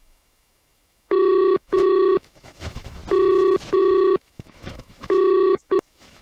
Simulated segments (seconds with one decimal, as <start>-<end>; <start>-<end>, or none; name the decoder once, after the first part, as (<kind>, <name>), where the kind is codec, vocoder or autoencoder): 0.0-3.0 (autoencoder, DAC-VAE); 3.8-6.2